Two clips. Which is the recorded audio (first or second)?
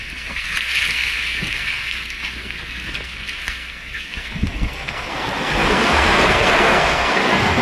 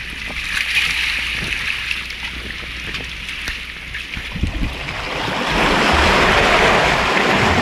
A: second